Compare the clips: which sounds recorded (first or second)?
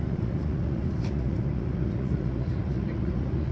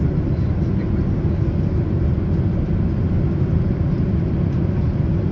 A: second